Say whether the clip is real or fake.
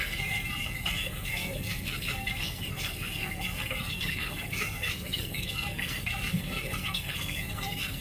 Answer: fake